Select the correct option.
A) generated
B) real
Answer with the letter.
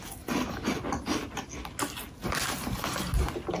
B